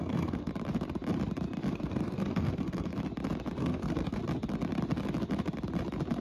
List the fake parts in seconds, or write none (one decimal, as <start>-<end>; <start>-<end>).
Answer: 0.0-0.5; 1.7-2.9; 3.6-4.2

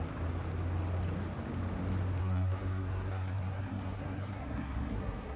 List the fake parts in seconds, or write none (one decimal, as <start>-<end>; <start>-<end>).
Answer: 2.2-5.4